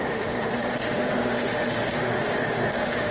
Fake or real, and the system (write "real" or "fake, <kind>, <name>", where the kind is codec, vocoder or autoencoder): fake, autoencoder, DAC-VAE